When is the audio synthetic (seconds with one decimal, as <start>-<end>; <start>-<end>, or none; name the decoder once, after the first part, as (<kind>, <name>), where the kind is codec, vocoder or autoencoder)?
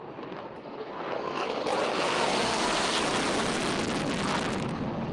0.6-3.0 (codec, SNAC)